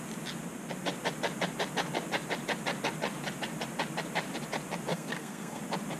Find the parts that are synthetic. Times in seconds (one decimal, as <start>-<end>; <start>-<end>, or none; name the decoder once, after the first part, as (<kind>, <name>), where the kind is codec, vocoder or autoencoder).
4.9-5.6 (codec, SNAC)